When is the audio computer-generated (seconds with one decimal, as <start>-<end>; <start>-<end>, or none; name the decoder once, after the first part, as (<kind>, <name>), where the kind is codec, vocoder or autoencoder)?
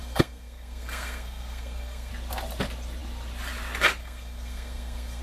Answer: 0.0-2.1 (codec, SNAC); 4.0-5.2